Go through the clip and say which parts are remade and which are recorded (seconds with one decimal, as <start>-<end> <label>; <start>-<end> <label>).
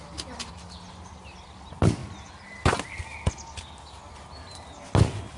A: 0.0-5.4 recorded